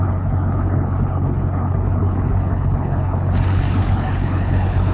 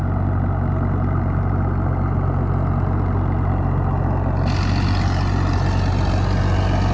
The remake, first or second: first